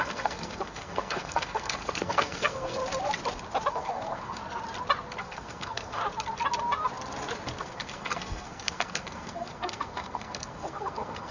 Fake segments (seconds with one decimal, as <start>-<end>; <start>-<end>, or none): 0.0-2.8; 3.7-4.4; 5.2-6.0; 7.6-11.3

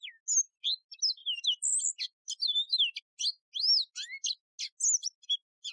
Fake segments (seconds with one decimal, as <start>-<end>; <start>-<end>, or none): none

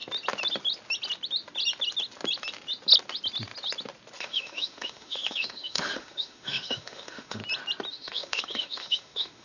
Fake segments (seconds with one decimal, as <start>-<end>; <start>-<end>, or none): 4.2-7.4; 7.9-9.4